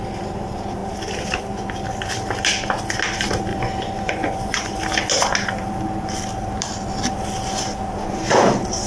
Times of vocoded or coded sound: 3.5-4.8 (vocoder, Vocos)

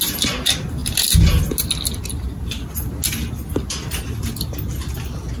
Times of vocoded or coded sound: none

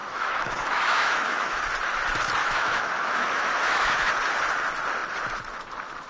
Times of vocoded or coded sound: 0.0-1.6 (autoencoder, DAC-VAE); 2.4-4.1

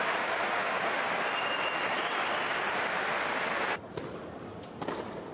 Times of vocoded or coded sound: none

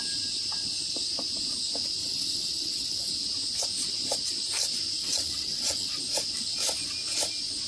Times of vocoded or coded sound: 2.0-3.1 (vocoder, WaveNeXt); 5.0-6.0